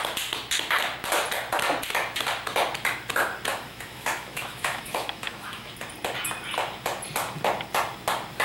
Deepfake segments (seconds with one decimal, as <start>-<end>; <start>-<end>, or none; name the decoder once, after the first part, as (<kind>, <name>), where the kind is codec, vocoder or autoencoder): 3.5-5.7 (autoencoder, DAC-VAE)